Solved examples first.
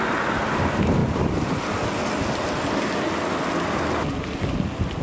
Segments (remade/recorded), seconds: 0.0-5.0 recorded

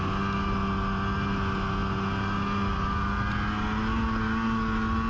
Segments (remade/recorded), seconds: 0.0-5.1 recorded

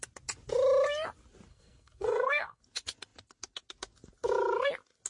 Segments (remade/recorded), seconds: 0.0-1.5 recorded; 1.5-2.6 remade; 2.6-5.1 recorded

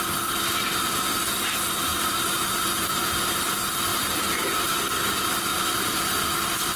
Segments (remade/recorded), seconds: 0.0-1.9 recorded; 1.9-3.5 remade; 3.5-3.9 recorded; 3.9-4.7 remade; 4.7-5.5 recorded; 5.5-6.1 remade; 6.1-6.8 recorded

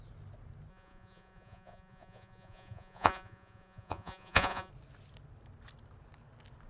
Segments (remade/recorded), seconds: 0.0-0.7 recorded; 0.7-4.7 remade; 4.7-6.7 recorded

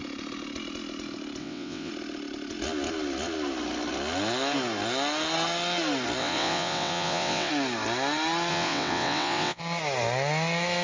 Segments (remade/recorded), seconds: 0.0-1.4 recorded; 1.4-1.9 remade; 1.9-6.2 recorded; 6.2-7.5 remade; 7.5-8.5 recorded; 8.5-9.6 remade; 9.6-10.8 recorded